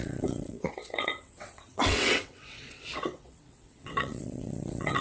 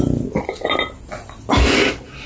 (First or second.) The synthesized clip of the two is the first